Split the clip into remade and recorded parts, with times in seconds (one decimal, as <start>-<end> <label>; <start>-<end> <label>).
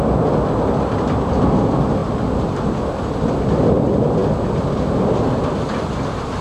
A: 0.0-2.0 recorded; 2.0-2.7 remade; 2.7-6.4 recorded